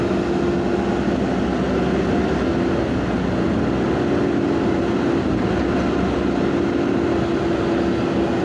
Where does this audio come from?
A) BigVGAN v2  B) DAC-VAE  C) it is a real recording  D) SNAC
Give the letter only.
C